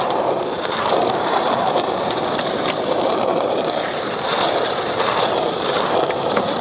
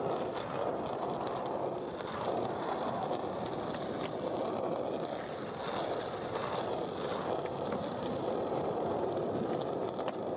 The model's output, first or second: first